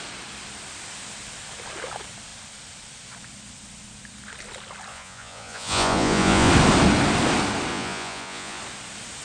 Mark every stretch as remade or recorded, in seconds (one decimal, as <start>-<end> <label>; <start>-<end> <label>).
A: 0.0-4.9 recorded; 4.9-6.5 remade; 6.5-7.7 recorded; 7.7-8.6 remade; 8.6-9.2 recorded